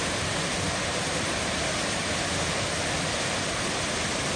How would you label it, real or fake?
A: real